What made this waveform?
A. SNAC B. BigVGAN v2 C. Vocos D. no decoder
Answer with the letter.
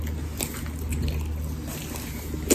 D